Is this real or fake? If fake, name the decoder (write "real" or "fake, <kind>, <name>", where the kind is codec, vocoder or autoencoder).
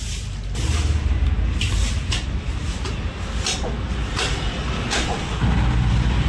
real